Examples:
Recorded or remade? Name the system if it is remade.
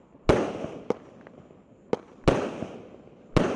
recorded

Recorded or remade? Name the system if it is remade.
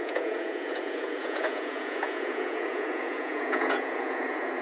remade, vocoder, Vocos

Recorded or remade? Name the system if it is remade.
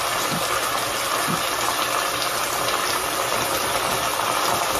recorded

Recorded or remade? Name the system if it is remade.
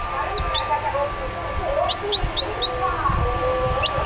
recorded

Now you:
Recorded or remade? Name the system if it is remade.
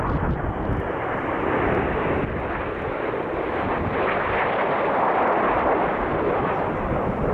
recorded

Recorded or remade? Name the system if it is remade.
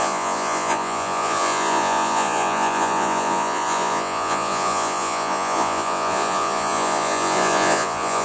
remade, vocoder, Vocos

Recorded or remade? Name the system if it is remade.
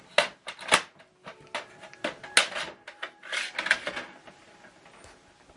recorded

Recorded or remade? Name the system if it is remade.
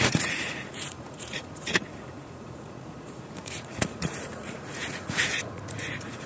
remade, vocoder, Vocos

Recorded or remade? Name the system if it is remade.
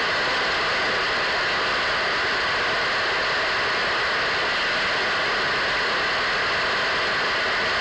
recorded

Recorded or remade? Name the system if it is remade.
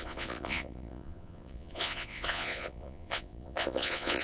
remade, vocoder, Vocos